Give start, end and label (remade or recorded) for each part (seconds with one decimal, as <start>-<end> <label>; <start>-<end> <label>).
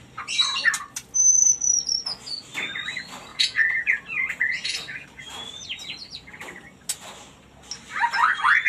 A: 0.0-3.3 recorded; 3.3-4.0 remade; 4.0-8.7 recorded